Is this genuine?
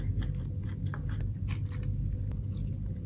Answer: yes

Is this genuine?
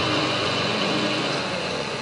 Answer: no